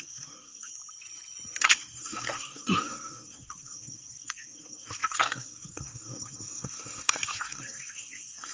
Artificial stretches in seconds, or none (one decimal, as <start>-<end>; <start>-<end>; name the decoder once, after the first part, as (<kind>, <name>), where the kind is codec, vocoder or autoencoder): 0.0-0.7 (codec, SNAC); 1.6-8.5